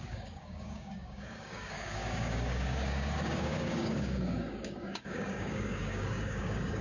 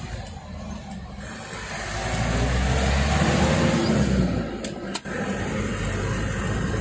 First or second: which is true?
second